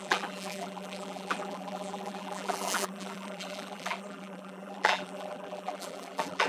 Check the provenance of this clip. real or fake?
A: fake